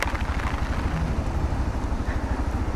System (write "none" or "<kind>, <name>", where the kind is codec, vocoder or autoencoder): none